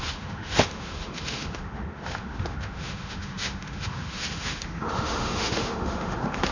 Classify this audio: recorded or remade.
remade